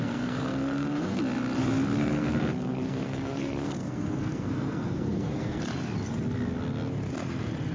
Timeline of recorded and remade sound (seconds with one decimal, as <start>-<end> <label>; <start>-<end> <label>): 0.0-1.2 remade; 1.2-2.0 recorded; 2.0-5.6 remade; 5.6-7.7 recorded